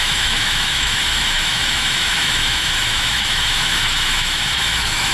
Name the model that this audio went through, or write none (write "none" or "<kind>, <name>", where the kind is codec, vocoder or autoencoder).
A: autoencoder, DAC-VAE